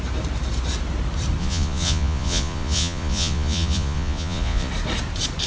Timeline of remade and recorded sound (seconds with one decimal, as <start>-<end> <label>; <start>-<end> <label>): 0.0-1.4 recorded; 1.4-4.7 remade; 4.7-5.5 recorded